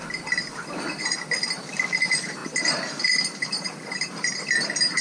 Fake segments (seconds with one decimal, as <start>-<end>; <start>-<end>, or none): none